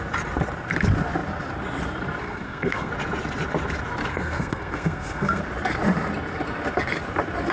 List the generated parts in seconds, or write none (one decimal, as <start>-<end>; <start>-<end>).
2.2-2.9; 4.1-5.4